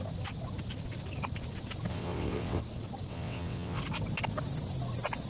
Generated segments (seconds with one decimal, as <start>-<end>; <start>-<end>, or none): 1.9-2.6; 3.1-3.8